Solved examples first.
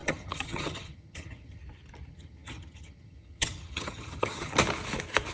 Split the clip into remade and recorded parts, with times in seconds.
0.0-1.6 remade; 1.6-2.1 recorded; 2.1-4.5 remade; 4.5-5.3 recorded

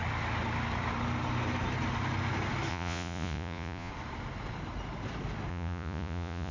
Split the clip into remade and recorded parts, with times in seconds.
0.0-2.7 recorded; 2.7-3.9 remade; 3.9-5.5 recorded; 5.5-6.5 remade

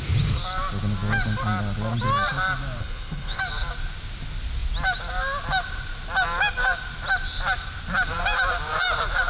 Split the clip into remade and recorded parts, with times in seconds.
0.0-2.8 recorded; 2.8-3.4 remade; 3.4-9.3 recorded

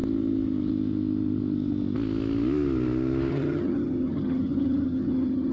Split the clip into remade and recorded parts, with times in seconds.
0.0-3.3 recorded; 3.3-5.5 remade